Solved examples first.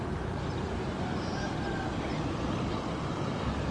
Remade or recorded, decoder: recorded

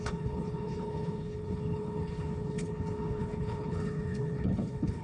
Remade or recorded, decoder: remade, codec, HILCodec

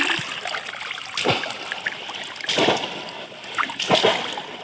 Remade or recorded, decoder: recorded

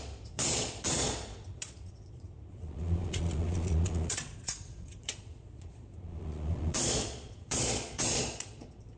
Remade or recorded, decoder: remade, vocoder, Vocos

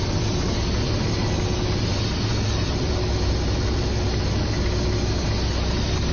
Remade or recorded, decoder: recorded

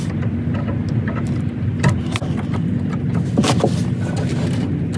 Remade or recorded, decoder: recorded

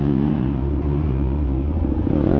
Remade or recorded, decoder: remade, vocoder, Vocos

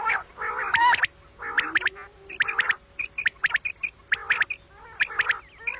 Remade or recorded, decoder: recorded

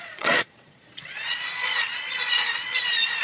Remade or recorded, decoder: remade, vocoder, Vocos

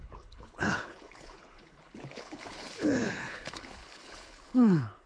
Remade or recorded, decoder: remade, codec, HILCodec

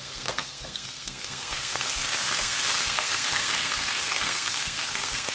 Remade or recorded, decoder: remade, codec, SNAC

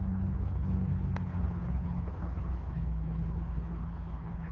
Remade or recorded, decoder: remade, codec, HILCodec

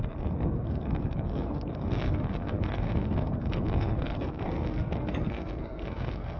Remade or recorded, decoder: remade, codec, SNAC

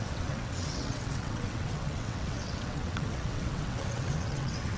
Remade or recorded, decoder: remade, vocoder, WaveNeXt